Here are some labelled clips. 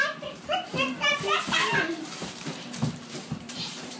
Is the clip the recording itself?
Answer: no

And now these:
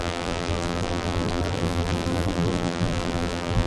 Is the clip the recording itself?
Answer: no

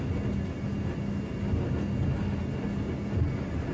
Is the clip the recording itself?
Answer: yes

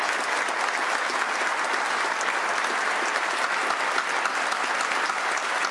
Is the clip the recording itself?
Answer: yes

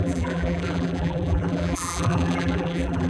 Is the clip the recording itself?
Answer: no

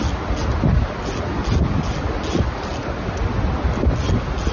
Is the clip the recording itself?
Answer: yes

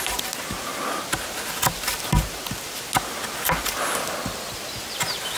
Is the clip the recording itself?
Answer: yes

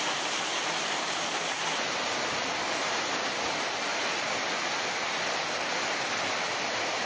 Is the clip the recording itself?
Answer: yes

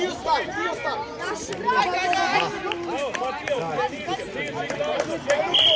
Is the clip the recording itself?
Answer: no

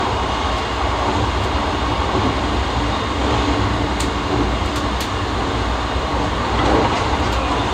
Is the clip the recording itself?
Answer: yes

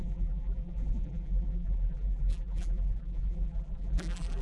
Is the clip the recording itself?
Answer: no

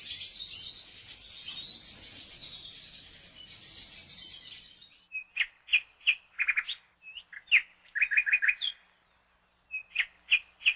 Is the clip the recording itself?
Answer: yes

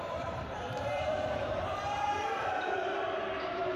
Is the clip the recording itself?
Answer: no